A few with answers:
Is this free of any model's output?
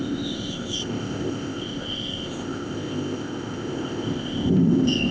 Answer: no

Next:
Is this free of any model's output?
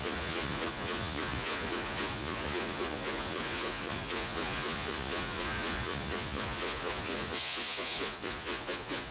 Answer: no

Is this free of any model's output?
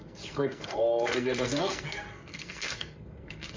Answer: no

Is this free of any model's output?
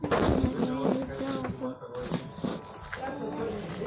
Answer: yes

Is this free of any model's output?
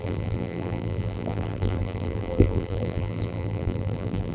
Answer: no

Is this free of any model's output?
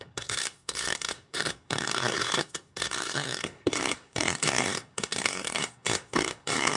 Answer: no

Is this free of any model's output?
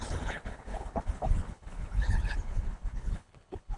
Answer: no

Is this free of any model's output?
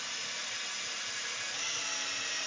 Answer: yes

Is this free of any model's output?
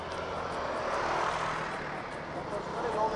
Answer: yes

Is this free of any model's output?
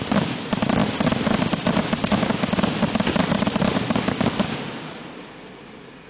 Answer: no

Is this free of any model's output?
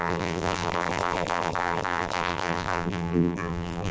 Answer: no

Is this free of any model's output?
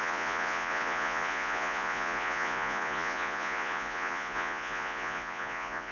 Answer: no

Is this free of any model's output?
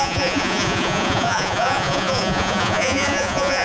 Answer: no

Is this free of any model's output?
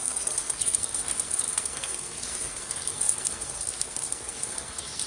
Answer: no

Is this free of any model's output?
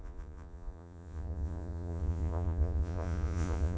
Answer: no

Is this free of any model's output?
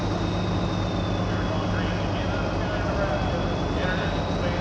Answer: yes